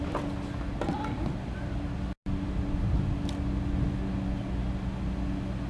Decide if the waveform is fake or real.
real